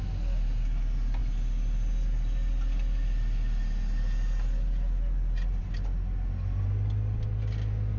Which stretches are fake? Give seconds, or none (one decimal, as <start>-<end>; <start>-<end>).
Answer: none